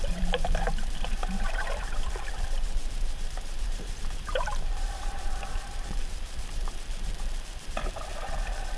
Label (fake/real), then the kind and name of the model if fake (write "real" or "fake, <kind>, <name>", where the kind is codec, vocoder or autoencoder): fake, vocoder, BigVGAN v2